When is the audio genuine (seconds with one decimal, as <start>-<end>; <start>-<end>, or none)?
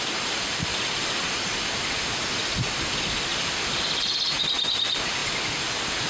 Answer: 0.0-3.3; 4.4-5.2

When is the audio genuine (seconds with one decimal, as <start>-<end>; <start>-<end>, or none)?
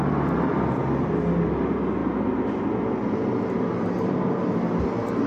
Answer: 0.0-5.3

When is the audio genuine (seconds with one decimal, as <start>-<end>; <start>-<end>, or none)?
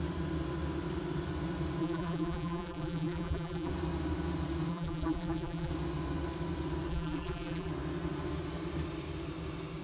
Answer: 0.0-1.8; 3.7-4.7; 5.7-6.9; 7.7-9.8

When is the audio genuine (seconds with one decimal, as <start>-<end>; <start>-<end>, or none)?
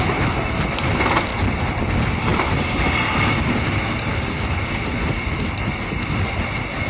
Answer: 0.0-2.3; 3.4-6.9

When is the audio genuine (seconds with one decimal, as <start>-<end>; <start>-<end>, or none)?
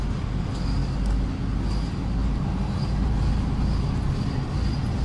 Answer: 0.0-2.2; 3.3-5.0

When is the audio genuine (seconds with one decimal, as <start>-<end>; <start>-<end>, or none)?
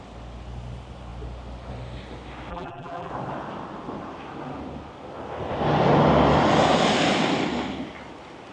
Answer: 0.0-2.5; 3.1-8.5